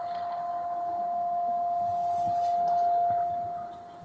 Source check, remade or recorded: recorded